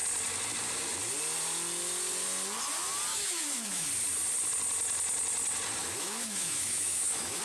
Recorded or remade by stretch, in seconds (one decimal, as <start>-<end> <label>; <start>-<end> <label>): 0.0-3.1 recorded; 3.1-3.9 remade; 3.9-5.8 recorded; 5.8-7.4 remade